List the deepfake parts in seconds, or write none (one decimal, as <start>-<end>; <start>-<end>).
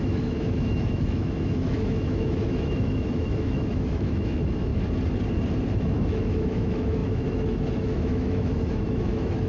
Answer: 0.0-4.7; 5.8-9.5